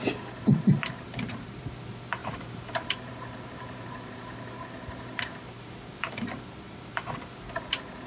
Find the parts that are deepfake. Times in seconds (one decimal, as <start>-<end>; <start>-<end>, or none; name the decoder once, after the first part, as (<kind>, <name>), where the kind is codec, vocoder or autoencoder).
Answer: 0.5-1.6 (vocoder, BigVGAN v2); 2.2-7.1